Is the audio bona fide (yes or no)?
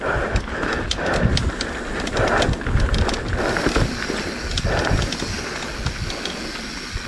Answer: yes